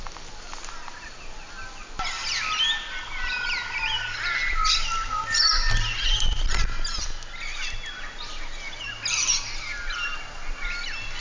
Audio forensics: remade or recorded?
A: recorded